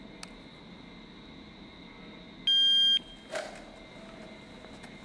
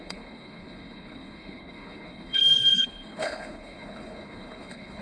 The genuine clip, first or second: first